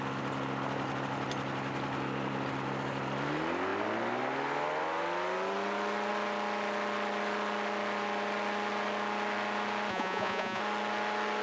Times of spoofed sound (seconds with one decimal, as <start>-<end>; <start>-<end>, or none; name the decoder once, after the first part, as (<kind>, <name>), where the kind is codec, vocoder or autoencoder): 9.9-10.6 (vocoder, Vocos)

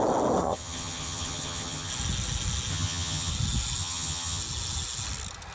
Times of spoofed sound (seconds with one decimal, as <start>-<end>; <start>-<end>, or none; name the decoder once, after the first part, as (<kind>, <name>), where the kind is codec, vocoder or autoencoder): 0.4-1.9 (vocoder, HiFi-GAN); 2.7-3.3; 3.8-4.4

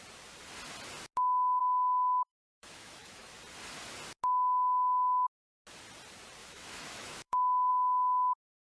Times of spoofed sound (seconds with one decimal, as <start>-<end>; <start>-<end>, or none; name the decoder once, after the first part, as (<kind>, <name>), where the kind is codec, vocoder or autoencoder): 1.6-3.4 (autoencoder, DAC-VAE); 6.4-7.7

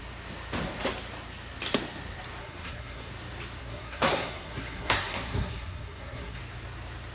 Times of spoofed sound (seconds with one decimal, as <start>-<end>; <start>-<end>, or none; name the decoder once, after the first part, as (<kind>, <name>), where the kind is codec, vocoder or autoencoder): 2.4-3.1 (codec, SNAC); 3.6-6.4

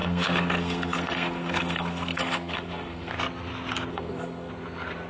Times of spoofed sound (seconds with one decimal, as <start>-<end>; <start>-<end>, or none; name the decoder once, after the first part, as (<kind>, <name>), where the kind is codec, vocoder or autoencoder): 0.0-3.1 (codec, SNAC); 3.9-4.5

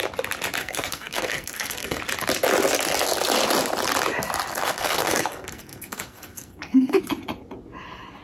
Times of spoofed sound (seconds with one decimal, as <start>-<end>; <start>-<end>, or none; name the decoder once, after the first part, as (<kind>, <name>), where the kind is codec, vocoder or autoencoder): 0.6-2.0 (codec, SNAC); 4.5-7.0

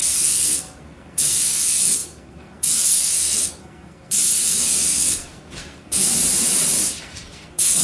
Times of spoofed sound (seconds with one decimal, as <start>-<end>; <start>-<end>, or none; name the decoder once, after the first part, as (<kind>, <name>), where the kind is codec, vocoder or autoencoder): 0.0-6.1 (codec, SNAC); 7.0-7.8